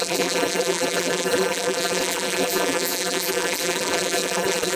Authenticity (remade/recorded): remade